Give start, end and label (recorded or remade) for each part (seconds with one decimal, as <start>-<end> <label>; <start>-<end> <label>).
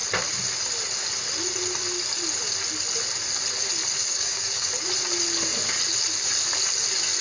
0.0-4.0 recorded; 4.0-4.7 remade; 4.7-7.2 recorded